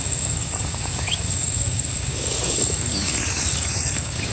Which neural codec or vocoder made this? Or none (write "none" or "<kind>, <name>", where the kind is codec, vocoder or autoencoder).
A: codec, DAC